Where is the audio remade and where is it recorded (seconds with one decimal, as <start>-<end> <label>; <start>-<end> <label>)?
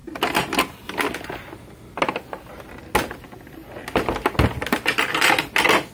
0.0-5.9 recorded